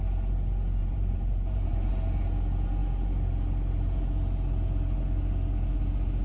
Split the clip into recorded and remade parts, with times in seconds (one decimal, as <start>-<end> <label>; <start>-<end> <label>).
0.0-0.8 recorded; 0.8-1.9 remade; 1.9-6.2 recorded